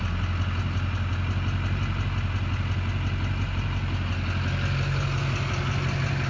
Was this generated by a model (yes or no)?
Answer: no